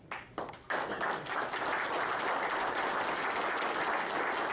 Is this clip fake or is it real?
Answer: real